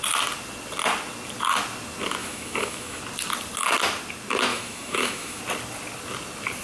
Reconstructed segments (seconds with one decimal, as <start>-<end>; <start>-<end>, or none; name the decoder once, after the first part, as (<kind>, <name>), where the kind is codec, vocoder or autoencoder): 2.2-3.0 (autoencoder, DAC-VAE); 4.5-5.4